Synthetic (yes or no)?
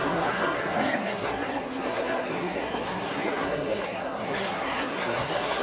yes